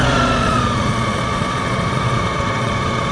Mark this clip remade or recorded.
remade